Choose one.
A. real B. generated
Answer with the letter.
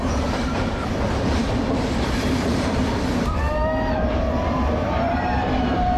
B